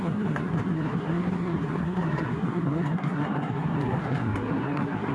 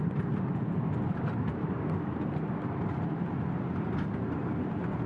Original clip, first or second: second